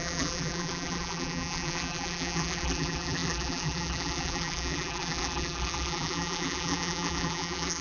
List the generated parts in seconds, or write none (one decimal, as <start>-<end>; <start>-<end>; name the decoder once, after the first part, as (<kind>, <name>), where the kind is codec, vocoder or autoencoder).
0.0-7.8 (vocoder, BigVGAN v2)